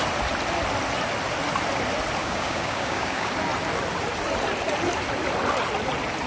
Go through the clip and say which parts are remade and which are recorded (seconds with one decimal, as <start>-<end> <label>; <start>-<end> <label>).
0.0-2.2 recorded; 2.2-3.3 remade; 3.3-6.3 recorded